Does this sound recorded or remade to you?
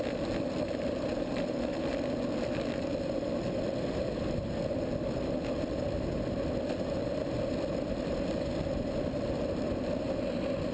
recorded